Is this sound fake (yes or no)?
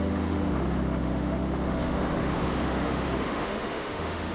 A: yes